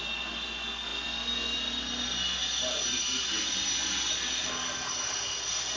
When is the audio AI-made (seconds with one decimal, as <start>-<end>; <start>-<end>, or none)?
none